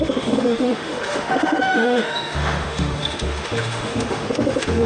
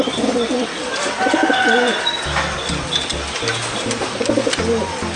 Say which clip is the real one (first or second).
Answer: second